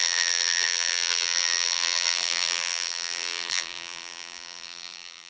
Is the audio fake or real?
fake